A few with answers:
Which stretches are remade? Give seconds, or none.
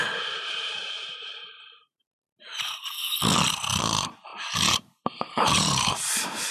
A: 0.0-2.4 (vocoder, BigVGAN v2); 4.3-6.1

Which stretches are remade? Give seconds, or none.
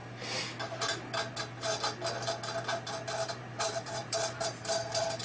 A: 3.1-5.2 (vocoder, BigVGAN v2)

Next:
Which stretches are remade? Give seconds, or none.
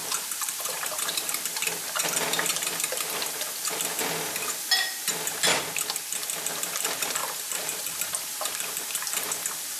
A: 0.0-1.1 (vocoder, BigVGAN v2); 7.2-8.0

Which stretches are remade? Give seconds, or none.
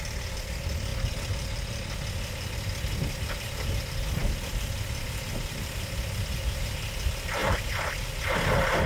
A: none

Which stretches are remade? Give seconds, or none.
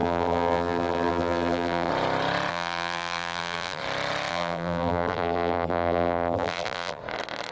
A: 0.0-1.9 (vocoder, BigVGAN v2); 2.5-3.8; 4.3-7.0